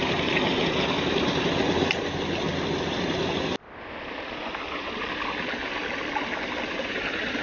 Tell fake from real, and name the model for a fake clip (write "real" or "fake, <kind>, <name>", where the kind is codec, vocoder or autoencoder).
real